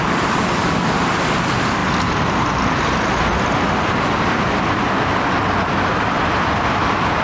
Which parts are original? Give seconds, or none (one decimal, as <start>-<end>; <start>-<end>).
0.6-1.2